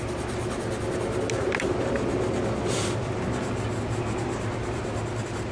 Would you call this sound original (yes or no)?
yes